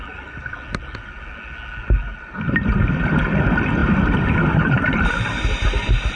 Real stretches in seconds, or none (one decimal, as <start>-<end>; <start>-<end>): 0.0-6.2